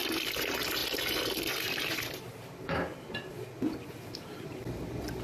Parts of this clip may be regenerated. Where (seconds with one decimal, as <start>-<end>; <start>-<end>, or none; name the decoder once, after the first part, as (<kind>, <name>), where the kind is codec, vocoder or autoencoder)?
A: 0.0-0.8 (vocoder, BigVGAN v2); 3.9-5.2